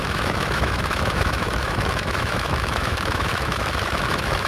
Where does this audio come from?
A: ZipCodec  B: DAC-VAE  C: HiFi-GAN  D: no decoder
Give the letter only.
B